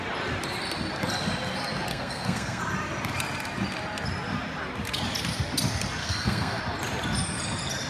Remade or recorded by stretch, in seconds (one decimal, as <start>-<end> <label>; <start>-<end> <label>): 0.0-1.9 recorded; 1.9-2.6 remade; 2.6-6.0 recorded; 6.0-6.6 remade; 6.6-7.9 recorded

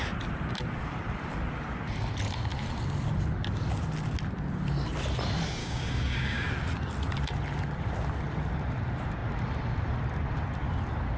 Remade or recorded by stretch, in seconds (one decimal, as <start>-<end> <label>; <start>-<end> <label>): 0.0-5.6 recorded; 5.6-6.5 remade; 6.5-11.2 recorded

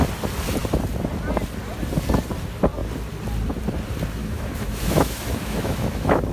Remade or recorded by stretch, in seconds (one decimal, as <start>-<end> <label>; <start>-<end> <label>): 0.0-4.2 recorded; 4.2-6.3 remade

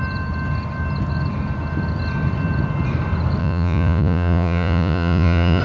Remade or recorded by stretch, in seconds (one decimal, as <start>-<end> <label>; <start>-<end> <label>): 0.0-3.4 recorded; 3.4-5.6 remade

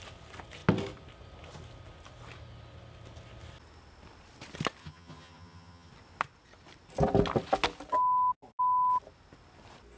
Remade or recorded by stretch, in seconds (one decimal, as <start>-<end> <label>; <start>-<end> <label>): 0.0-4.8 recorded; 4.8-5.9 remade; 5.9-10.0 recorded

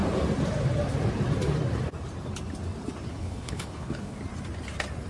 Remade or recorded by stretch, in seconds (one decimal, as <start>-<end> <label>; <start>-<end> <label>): 0.0-3.1 recorded; 3.1-4.2 remade; 4.2-5.1 recorded

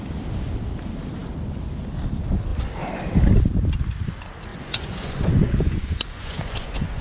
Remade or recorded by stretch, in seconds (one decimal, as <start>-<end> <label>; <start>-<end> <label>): 0.0-4.5 recorded; 4.5-7.0 remade

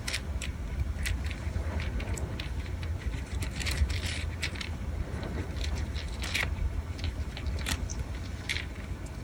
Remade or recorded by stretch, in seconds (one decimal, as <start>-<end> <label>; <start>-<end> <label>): 0.0-7.9 remade; 7.9-8.5 recorded; 8.5-9.2 remade